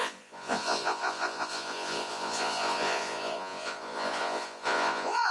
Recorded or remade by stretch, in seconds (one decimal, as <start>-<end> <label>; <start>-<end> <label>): 0.0-5.3 remade